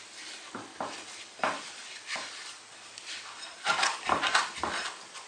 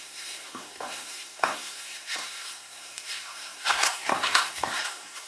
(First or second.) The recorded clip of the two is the first